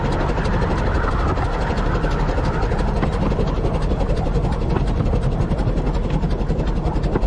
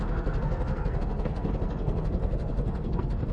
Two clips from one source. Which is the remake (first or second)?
second